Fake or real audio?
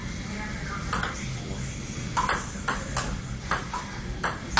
real